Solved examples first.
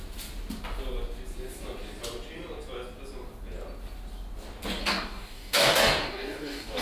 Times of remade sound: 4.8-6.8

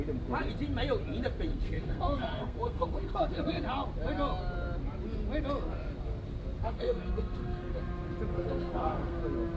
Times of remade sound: 1.5-3.6; 6.6-7.8; 8.3-9.2

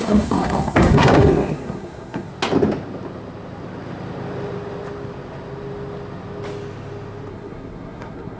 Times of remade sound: 0.0-2.3; 7.3-8.4

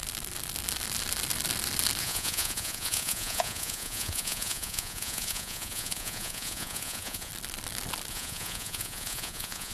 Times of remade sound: 2.0-7.3; 8.1-9.7

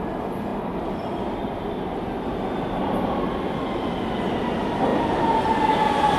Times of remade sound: none